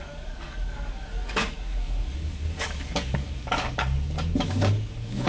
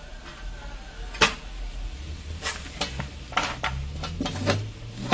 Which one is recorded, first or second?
second